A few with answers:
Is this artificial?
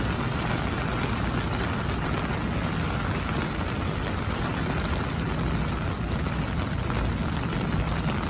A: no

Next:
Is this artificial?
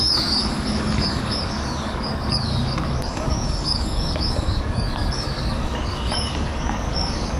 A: yes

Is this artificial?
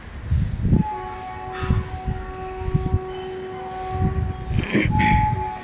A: no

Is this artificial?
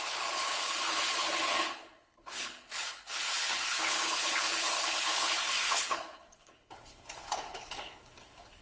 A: yes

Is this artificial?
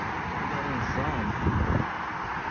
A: no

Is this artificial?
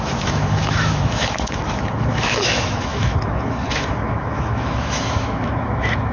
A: yes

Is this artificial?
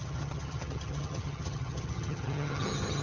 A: yes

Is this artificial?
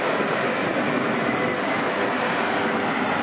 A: no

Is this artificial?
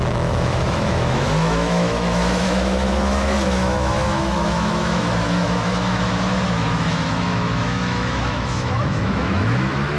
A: yes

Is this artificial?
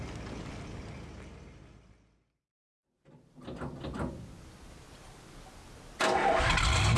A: no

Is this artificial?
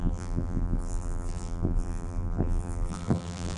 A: yes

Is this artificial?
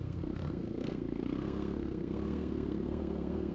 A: yes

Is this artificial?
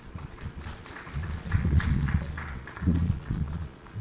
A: yes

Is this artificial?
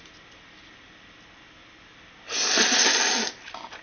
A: no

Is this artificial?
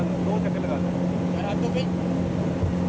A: no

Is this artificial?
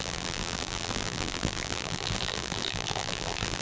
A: yes